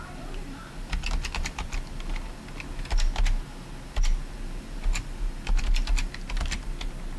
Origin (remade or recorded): recorded